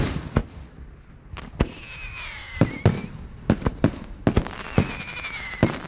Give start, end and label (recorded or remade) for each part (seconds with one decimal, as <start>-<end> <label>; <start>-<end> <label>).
0.0-5.9 recorded